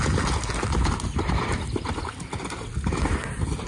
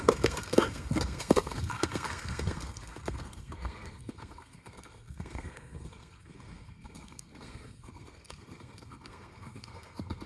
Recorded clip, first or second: first